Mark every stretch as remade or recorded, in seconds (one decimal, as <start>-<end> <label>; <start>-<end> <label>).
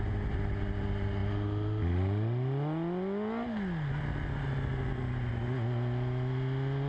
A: 0.0-6.9 recorded